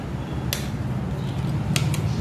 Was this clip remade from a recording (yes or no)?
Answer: no